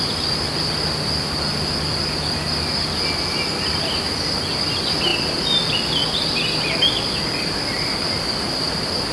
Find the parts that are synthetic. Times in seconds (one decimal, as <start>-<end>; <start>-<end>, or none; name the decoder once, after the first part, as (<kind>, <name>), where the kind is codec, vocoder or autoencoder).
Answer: none